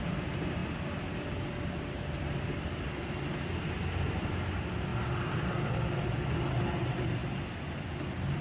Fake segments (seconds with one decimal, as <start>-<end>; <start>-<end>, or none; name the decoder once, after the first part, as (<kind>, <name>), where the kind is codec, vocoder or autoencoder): none